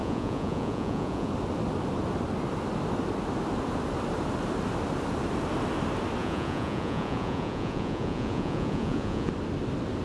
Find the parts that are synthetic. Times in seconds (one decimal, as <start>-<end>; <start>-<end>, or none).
0.0-1.3; 6.2-9.3